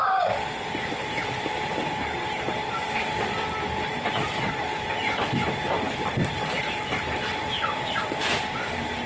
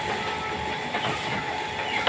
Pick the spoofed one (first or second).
first